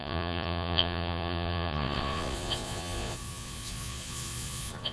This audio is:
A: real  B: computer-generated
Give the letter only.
B